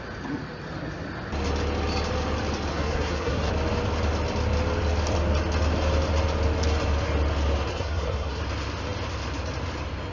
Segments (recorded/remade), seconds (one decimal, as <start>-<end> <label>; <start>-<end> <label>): 0.0-2.7 recorded; 2.7-3.5 remade; 3.5-7.7 recorded; 7.7-8.4 remade; 8.4-10.1 recorded